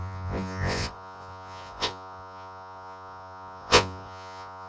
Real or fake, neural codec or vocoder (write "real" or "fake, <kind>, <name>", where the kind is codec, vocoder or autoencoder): fake, vocoder, Vocos